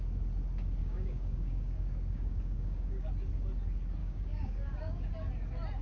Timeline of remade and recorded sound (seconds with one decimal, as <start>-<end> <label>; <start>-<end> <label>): 0.0-0.8 recorded; 0.8-3.1 remade; 3.1-4.0 recorded; 4.0-5.1 remade; 5.1-5.8 recorded